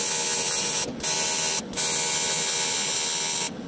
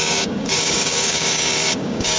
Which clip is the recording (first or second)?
first